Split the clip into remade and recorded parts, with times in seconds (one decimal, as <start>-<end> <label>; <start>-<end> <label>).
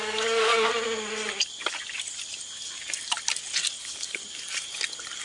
0.0-0.7 remade; 0.7-3.8 recorded; 3.8-4.2 remade; 4.2-5.2 recorded